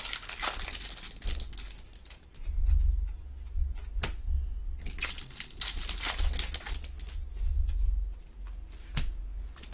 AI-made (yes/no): no